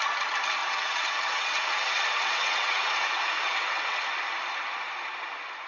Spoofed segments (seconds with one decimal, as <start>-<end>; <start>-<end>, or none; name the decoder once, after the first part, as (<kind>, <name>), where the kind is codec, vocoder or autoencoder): 0.6-4.0 (vocoder, WaveNeXt)